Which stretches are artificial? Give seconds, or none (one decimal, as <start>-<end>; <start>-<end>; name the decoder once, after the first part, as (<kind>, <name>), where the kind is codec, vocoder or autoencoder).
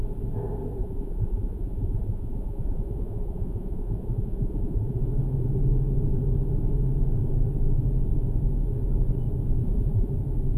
0.8-5.0 (vocoder, Vocos); 9.6-10.1